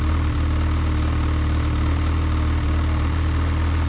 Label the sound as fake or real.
real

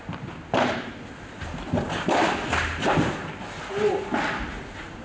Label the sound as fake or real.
real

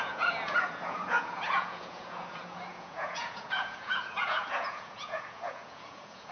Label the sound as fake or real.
fake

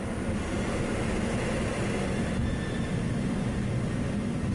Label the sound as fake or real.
real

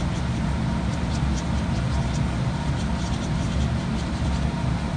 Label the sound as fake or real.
real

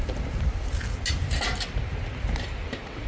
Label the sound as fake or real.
real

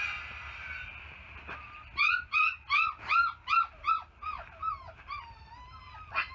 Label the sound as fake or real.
real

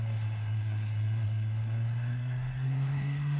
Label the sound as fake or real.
fake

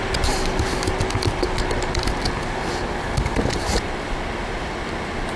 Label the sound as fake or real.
real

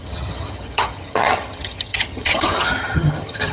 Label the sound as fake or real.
fake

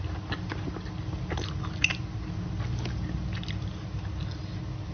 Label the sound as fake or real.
real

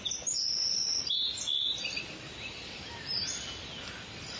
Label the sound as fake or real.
fake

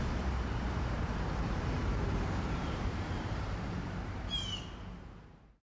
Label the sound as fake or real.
fake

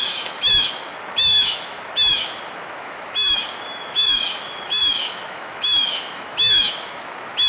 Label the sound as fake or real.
fake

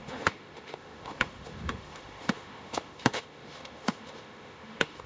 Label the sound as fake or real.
fake